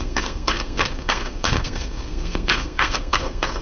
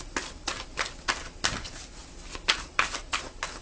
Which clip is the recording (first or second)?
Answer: second